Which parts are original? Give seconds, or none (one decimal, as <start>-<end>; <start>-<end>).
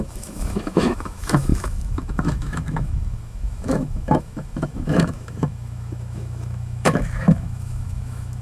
none